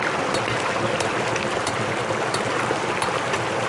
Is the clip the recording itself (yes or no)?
yes